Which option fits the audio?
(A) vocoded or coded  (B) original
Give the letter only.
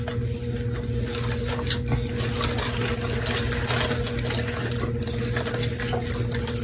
B